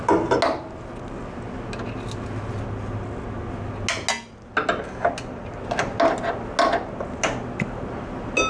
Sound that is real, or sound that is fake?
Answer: real